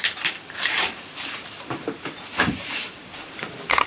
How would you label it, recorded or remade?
remade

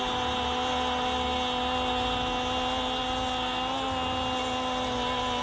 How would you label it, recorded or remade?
recorded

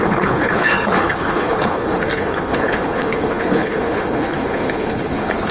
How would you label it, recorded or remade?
remade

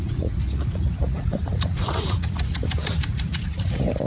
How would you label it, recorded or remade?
remade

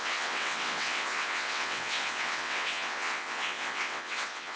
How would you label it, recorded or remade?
remade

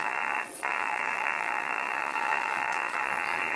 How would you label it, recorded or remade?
remade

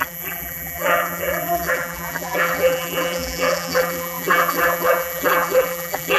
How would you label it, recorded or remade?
remade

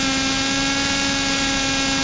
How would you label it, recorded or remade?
recorded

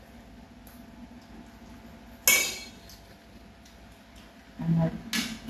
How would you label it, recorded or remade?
recorded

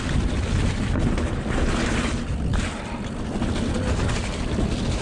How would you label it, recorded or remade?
recorded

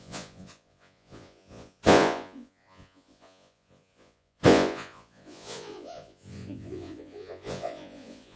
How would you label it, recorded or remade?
remade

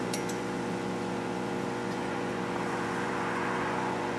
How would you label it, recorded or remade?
remade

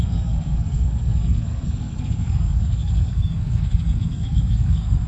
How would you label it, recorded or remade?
remade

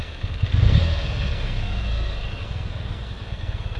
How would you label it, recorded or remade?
remade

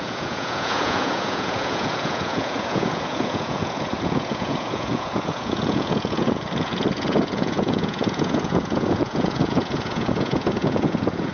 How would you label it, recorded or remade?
remade